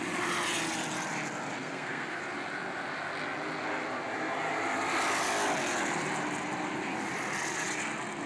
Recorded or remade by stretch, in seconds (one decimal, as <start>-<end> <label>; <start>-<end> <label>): 0.0-1.6 recorded; 1.6-2.2 remade; 2.2-8.3 recorded